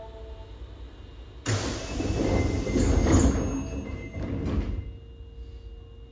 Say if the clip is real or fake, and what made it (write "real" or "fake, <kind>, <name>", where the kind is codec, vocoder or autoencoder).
real